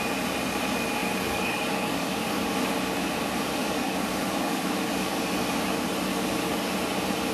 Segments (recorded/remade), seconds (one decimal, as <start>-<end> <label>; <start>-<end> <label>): 0.0-1.0 recorded; 1.0-2.7 remade; 2.7-3.6 recorded; 3.6-5.1 remade; 5.1-6.1 recorded; 6.1-6.7 remade; 6.7-7.3 recorded

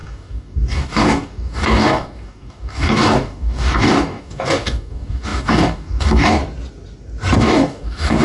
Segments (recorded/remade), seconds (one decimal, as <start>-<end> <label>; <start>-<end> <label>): 0.0-6.4 remade; 6.4-7.4 recorded; 7.4-8.2 remade

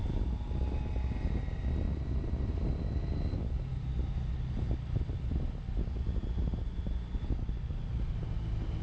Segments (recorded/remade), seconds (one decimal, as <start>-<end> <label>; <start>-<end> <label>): 0.0-8.8 recorded

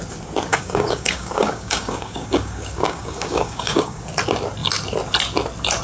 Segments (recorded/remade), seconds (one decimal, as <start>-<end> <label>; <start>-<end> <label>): 0.0-0.5 recorded; 0.5-4.0 remade; 4.0-5.8 recorded